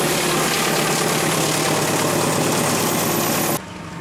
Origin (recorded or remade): recorded